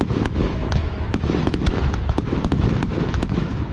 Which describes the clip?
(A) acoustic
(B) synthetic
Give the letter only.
B